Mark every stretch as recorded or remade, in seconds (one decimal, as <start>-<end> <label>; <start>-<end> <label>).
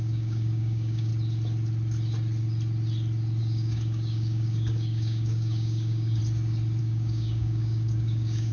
0.0-1.1 remade; 1.1-3.4 recorded; 3.4-6.2 remade; 6.2-6.8 recorded; 6.8-8.5 remade